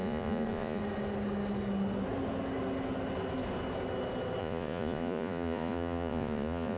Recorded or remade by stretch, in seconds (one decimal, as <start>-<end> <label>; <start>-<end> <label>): 0.0-0.8 remade; 0.8-4.4 recorded; 4.4-6.8 remade